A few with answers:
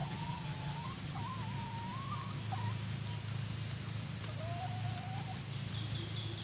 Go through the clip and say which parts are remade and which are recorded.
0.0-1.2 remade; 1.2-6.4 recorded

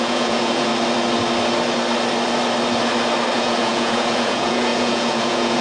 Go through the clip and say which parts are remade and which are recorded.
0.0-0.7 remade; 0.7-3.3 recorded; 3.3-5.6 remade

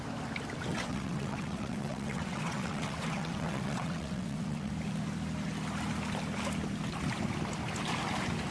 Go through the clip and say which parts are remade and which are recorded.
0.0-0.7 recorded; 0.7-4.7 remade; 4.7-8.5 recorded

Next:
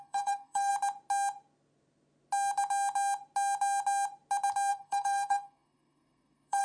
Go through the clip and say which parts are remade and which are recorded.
0.0-0.7 remade; 0.7-4.7 recorded; 4.7-6.6 remade